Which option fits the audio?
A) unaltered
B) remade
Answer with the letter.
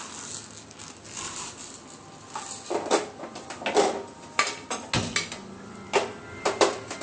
A